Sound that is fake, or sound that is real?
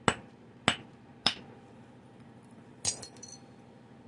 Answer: real